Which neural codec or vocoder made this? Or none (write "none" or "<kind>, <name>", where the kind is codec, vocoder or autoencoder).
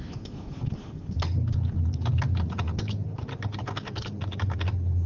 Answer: none